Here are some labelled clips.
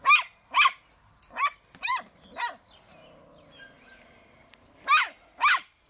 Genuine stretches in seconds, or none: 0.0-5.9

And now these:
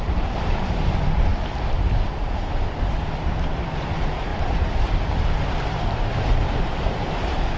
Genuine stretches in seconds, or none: 1.3-3.2